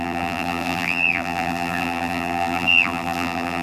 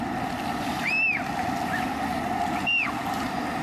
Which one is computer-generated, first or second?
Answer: first